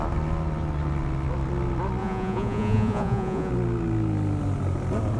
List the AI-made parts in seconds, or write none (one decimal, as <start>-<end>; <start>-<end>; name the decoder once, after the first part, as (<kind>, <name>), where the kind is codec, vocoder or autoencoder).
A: 2.0-3.5 (vocoder, Vocos)